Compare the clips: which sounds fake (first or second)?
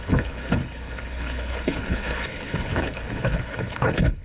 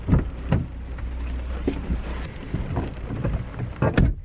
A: first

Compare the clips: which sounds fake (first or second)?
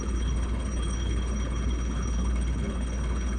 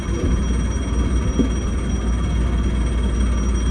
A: first